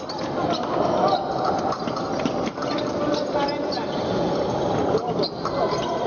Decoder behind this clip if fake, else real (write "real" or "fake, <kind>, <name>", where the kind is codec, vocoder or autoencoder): real